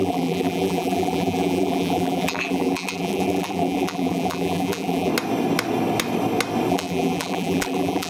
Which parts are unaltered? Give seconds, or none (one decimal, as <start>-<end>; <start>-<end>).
5.1-6.7